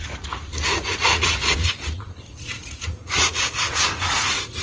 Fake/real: fake